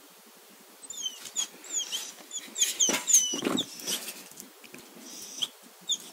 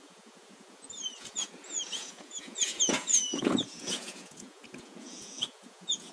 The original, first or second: first